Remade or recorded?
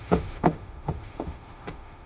remade